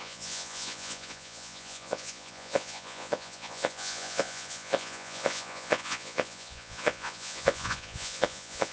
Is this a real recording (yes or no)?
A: no